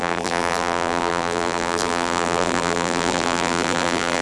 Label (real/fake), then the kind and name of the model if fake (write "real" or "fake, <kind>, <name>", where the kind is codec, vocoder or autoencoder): fake, vocoder, BigVGAN v2